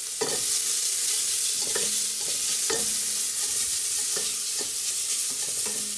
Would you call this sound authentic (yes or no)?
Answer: yes